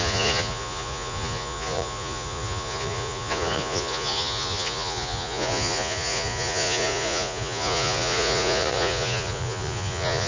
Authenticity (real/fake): fake